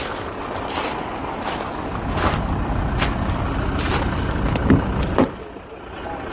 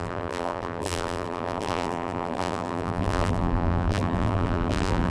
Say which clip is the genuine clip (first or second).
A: first